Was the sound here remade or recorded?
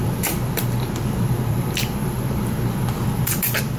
remade